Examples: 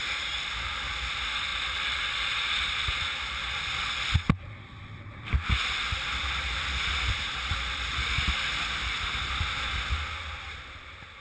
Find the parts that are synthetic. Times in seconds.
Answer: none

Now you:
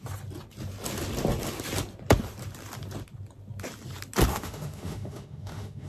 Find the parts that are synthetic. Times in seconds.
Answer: 4.3-5.9

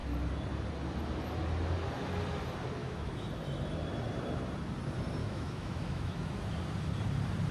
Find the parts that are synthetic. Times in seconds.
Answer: 2.8-3.3; 5.2-6.5

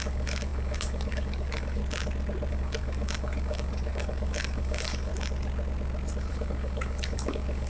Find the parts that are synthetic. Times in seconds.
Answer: 0.0-1.8; 2.5-5.1; 6.3-7.7

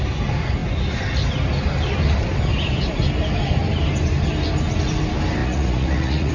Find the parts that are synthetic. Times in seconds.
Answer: 5.4-6.3

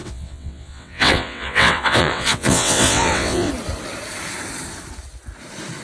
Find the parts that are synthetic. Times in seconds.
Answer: 0.0-3.5